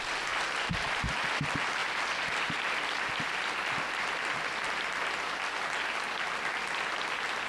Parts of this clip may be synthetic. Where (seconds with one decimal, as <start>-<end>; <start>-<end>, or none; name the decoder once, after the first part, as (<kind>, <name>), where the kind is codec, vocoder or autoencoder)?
1.8-5.2 (vocoder, BigVGAN v2)